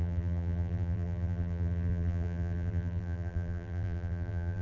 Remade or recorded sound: remade